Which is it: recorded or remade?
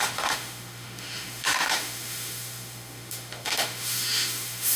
remade